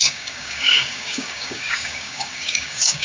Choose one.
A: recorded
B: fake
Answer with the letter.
B